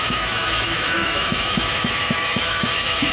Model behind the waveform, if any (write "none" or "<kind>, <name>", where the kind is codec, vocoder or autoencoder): autoencoder, DAC-VAE